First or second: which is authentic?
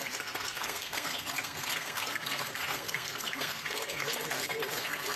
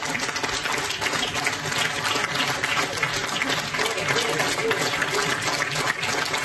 second